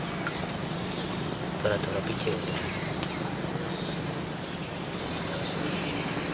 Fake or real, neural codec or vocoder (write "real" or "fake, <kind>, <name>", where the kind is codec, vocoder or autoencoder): real